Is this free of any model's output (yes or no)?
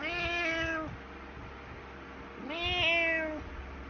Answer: yes